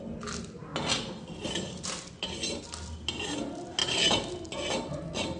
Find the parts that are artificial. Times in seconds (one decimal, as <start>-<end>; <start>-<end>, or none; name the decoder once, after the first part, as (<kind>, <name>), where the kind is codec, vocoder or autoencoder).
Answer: none